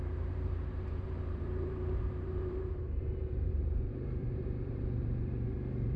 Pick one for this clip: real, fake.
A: fake